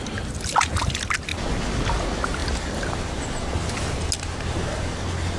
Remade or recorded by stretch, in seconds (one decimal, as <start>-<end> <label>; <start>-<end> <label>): 0.0-5.4 recorded